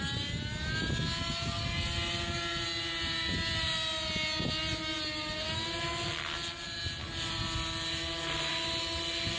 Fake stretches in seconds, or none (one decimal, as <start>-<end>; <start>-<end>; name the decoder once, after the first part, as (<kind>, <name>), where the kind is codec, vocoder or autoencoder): none